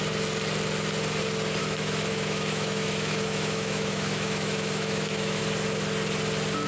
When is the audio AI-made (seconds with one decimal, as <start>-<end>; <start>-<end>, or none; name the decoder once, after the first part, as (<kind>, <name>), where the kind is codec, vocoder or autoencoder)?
1.6-5.4 (autoencoder, DAC-VAE)